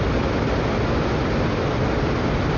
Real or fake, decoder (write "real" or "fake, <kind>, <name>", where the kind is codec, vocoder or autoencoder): real